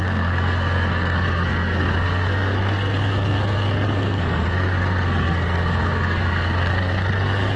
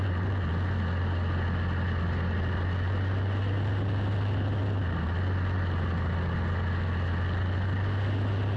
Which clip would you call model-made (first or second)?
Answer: first